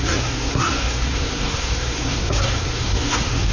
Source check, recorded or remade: remade